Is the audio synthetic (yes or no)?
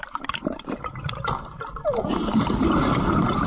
yes